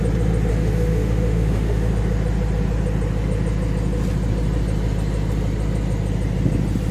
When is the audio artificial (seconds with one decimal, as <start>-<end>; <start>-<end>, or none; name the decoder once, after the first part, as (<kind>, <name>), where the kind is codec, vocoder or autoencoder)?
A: 0.5-1.9 (autoencoder, DAC-VAE)